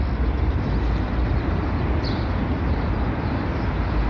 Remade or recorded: recorded